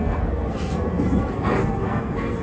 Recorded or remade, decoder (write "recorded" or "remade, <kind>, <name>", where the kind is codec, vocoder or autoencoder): remade, codec, SNAC